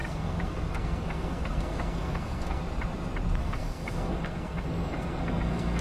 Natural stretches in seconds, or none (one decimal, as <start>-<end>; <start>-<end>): 2.6-3.4